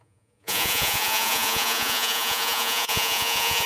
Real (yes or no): no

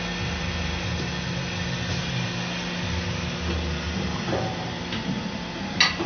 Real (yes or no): yes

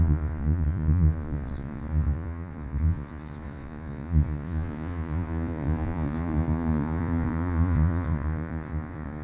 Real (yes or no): no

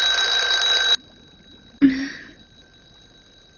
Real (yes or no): yes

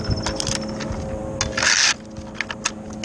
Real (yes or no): yes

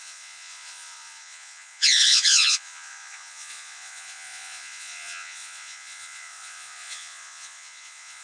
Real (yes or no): no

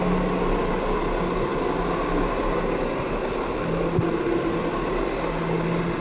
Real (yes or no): yes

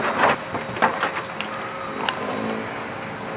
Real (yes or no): yes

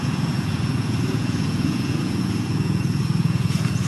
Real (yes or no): no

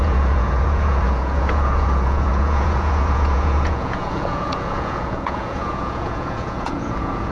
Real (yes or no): no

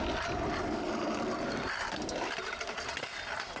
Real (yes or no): yes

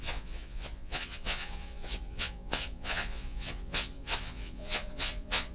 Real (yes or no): no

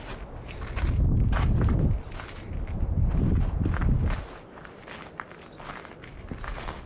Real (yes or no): yes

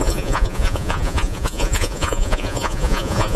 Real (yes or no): no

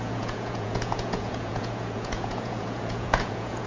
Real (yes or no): no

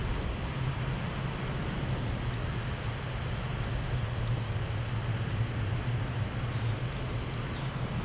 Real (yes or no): yes